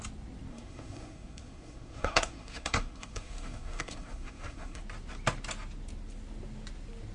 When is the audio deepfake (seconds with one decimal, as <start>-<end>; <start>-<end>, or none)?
0.5-4.8